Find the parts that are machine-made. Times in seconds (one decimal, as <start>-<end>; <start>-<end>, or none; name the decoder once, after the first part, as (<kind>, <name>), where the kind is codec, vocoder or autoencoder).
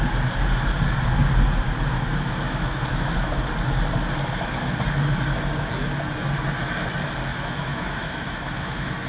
2.1-3.4 (autoencoder, DAC-VAE); 7.3-9.1